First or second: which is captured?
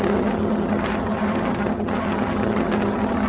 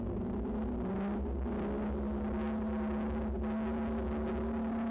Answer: second